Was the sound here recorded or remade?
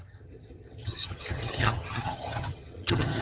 remade